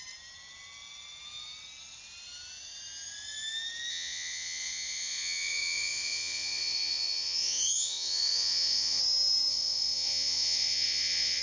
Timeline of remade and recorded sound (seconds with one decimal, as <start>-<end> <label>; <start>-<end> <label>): 0.0-3.9 recorded; 3.9-9.0 remade; 9.0-9.5 recorded; 9.5-11.4 remade